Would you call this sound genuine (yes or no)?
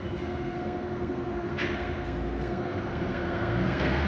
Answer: no